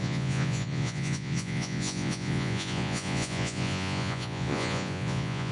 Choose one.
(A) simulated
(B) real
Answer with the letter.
A